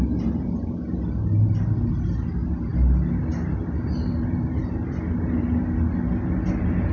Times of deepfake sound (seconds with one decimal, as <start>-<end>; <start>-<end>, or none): none